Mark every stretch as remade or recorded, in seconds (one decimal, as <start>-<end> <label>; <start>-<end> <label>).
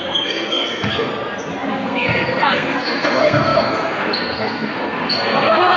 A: 0.0-1.1 remade; 1.1-1.7 recorded; 1.7-5.8 remade